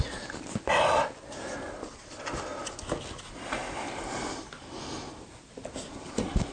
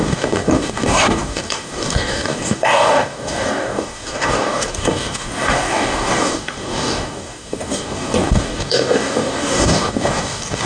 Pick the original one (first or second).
first